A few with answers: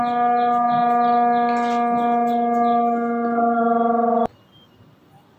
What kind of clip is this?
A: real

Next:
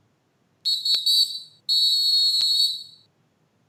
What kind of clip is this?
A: real